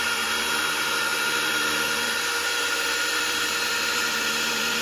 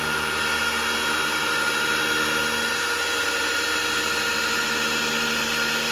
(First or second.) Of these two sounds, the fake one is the first